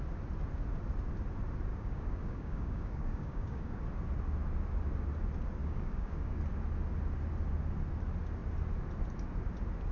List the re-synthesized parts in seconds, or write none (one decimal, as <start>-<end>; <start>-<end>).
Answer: 1.7-3.8; 5.6-6.4